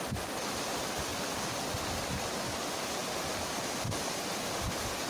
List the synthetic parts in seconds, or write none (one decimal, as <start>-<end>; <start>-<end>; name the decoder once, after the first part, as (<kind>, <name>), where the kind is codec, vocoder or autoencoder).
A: 3.0-3.5 (vocoder, BigVGAN v2)